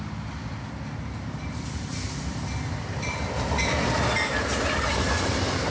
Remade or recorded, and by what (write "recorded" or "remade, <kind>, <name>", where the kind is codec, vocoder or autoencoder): recorded